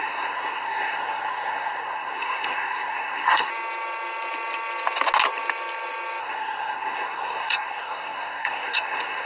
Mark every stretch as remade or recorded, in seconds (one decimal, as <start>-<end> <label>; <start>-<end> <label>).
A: 0.0-3.5 remade; 3.5-6.2 recorded; 6.2-9.3 remade